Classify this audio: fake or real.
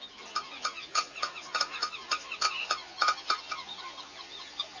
fake